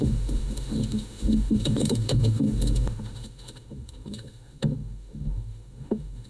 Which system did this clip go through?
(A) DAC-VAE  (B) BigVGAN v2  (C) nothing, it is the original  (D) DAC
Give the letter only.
A